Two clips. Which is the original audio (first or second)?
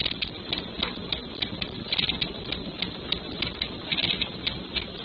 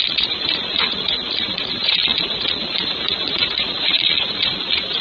first